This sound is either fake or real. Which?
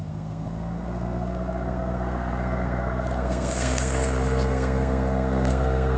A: fake